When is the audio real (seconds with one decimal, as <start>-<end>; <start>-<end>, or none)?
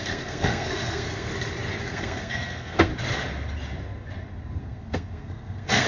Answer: 1.3-1.8; 2.9-4.6